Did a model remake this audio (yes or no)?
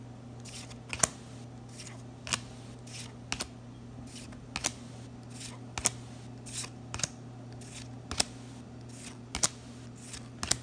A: no